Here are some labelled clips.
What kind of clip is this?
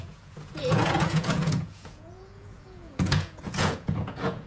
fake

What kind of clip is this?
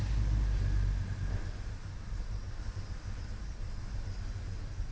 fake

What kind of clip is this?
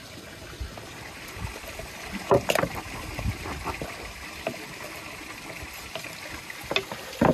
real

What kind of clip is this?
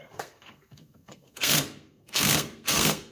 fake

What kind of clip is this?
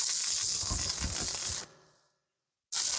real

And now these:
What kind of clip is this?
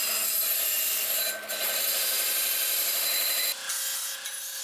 real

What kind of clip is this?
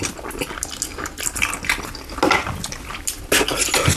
real